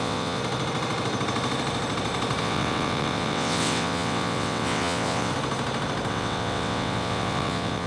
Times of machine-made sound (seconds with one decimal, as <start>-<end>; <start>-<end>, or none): 0.0-0.4; 2.4-5.3; 6.1-7.9